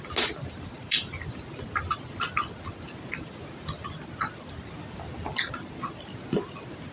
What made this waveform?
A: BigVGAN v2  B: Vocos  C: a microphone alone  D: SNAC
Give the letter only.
C